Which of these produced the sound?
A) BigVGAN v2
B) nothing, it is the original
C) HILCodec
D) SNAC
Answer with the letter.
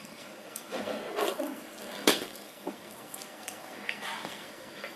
D